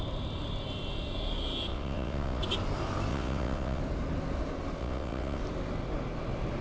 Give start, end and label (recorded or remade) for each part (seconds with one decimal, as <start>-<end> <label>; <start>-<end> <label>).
0.0-1.7 recorded; 1.7-2.4 remade; 2.4-3.1 recorded; 3.1-3.8 remade; 3.8-4.8 recorded; 4.8-5.4 remade; 5.4-6.6 recorded